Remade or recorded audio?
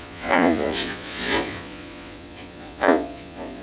remade